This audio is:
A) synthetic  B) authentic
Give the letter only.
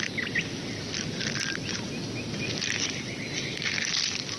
A